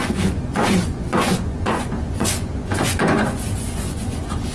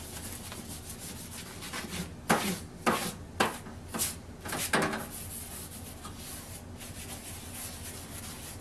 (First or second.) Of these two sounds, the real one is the second